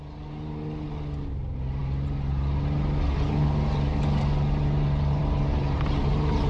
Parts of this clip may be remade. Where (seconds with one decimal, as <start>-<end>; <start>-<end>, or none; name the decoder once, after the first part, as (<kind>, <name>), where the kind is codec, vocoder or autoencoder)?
none